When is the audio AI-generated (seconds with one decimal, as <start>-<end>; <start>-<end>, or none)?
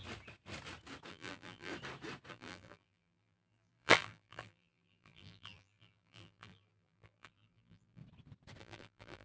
1.1-1.7; 2.3-8.0; 8.6-9.2